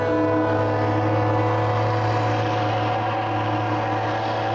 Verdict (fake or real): real